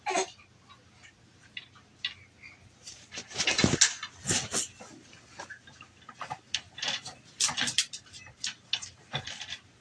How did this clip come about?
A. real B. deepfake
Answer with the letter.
A